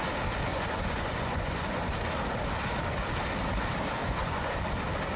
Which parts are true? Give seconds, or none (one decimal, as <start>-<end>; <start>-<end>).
0.0-0.5; 1.8-4.0; 4.6-5.2